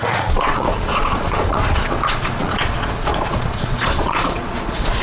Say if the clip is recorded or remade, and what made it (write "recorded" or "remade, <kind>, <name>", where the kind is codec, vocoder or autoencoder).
remade, vocoder, Vocos